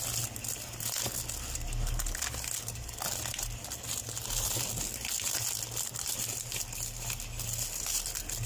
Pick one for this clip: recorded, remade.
recorded